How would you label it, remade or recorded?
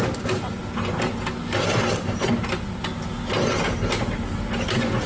recorded